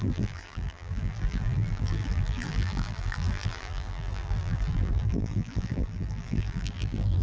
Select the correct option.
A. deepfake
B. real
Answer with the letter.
A